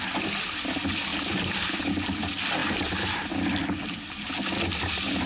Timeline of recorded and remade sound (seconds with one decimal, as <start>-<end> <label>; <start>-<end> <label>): 0.0-5.3 recorded